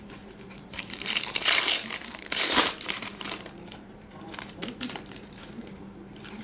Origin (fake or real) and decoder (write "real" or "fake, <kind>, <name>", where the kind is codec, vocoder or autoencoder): fake, vocoder, BigVGAN v2